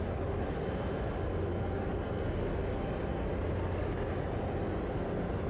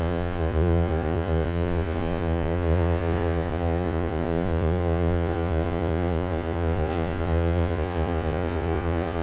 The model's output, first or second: second